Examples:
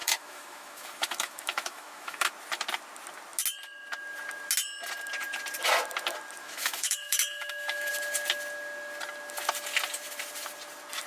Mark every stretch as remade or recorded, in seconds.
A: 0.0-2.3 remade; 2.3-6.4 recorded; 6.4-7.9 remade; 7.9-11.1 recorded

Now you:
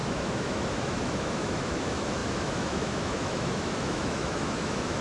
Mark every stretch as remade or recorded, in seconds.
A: 0.0-5.0 remade

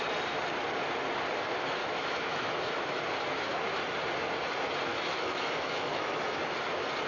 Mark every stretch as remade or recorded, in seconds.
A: 0.0-1.8 recorded; 1.8-3.0 remade; 3.0-4.9 recorded; 4.9-6.4 remade; 6.4-7.1 recorded

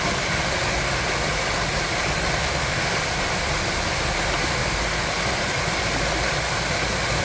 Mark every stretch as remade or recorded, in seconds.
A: 0.0-2.4 recorded; 2.4-2.9 remade; 2.9-7.2 recorded

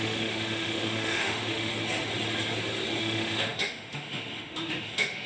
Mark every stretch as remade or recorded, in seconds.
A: 0.0-1.7 remade; 1.7-3.0 recorded; 3.0-5.3 remade

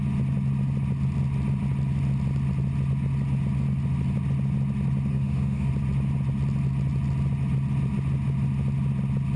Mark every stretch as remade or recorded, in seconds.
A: 0.0-5.1 recorded; 5.1-5.7 remade; 5.7-9.4 recorded

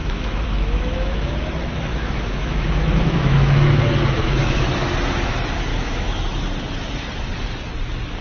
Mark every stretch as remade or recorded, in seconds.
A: 0.0-1.3 remade; 1.3-1.9 recorded; 1.9-4.6 remade; 4.6-5.7 recorded; 5.7-6.4 remade; 6.4-8.2 recorded

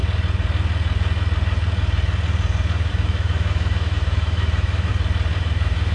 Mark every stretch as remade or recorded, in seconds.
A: 0.0-2.9 recorded; 2.9-4.9 remade; 4.9-5.4 recorded; 5.4-5.9 remade